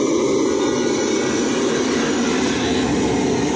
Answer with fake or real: real